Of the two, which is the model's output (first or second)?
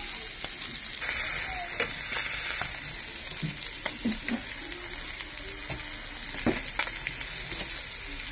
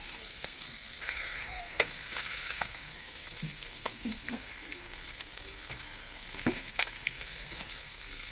second